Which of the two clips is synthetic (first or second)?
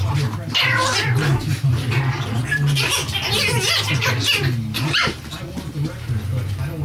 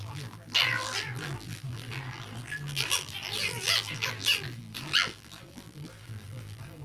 second